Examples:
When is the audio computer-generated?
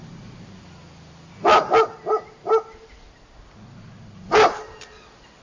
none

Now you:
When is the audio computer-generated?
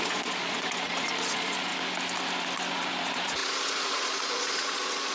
0.0-1.7; 2.7-5.1